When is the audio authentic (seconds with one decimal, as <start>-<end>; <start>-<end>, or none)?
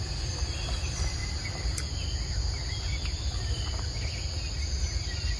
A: 0.0-5.4